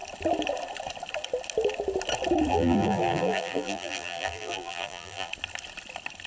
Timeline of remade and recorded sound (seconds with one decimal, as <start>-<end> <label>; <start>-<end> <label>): 0.0-2.5 recorded; 2.5-5.3 remade; 5.3-6.3 recorded